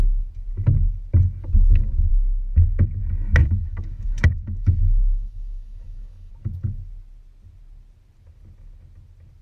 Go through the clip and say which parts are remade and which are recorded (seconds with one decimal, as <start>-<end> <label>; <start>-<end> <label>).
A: 0.0-1.4 recorded; 1.4-2.1 remade; 2.1-3.4 recorded; 3.4-6.3 remade; 6.3-9.4 recorded